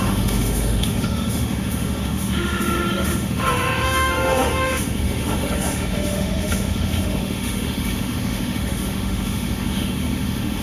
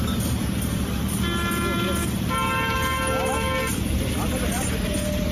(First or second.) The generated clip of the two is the first